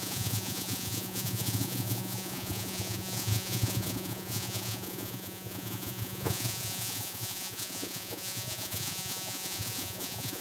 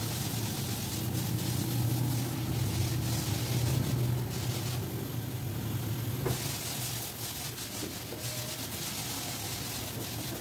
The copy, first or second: first